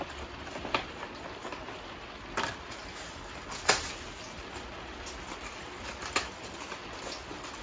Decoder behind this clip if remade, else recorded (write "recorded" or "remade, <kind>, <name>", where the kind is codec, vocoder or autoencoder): recorded